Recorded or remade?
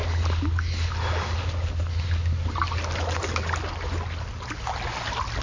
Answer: recorded